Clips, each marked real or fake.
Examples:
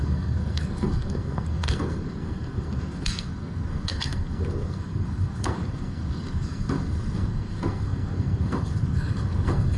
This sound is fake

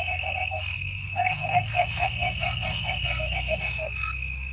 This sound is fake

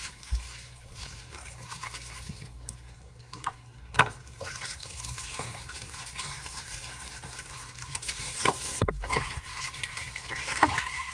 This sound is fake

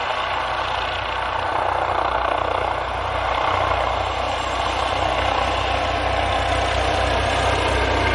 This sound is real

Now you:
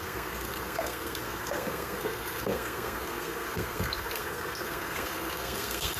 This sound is fake